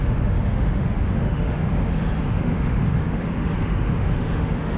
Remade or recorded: remade